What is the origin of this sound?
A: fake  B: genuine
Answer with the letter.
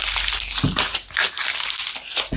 B